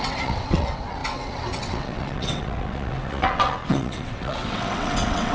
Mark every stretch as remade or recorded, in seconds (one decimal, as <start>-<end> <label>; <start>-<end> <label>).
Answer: 0.0-5.3 remade